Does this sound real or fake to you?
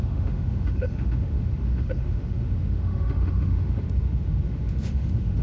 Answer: fake